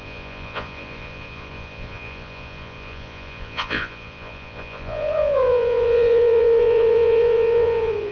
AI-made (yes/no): yes